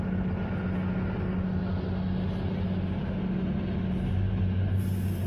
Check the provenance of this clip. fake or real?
real